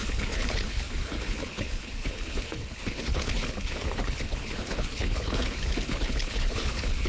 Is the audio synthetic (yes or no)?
yes